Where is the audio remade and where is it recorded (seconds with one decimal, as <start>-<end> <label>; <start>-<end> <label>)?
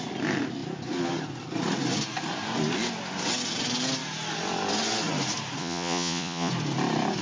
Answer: 0.0-5.6 recorded; 5.6-6.5 remade; 6.5-7.2 recorded